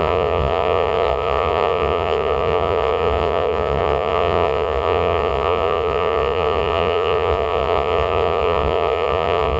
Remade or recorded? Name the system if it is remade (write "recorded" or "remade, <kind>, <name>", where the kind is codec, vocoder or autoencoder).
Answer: remade, vocoder, Vocos